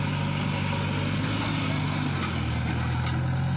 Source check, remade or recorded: recorded